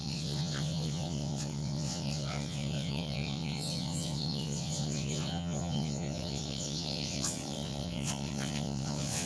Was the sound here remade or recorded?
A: remade